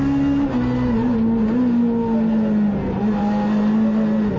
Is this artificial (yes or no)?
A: no